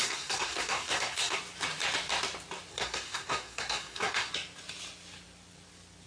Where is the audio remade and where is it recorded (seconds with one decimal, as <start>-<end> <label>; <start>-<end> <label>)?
0.0-1.4 remade; 1.4-2.7 recorded; 2.7-4.3 remade; 4.3-6.1 recorded